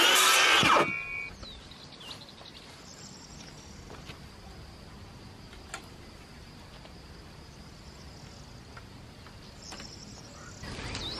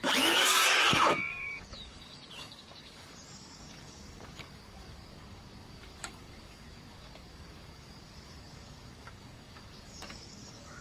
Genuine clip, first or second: first